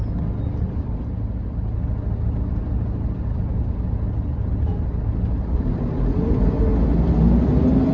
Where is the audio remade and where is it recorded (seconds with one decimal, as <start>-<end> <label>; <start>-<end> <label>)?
0.0-4.7 recorded; 4.7-6.3 remade; 6.3-7.9 recorded